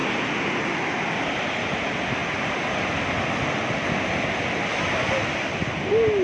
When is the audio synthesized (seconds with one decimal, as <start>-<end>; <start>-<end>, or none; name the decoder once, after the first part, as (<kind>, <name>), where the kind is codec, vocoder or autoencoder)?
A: 0.0-0.5 (vocoder, BigVGAN v2)